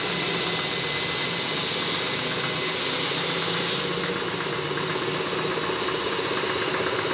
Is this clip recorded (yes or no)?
yes